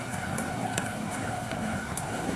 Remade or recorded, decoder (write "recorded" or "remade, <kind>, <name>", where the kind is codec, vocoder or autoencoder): remade, codec, SNAC